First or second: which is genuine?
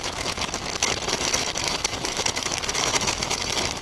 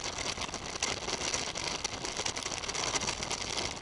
second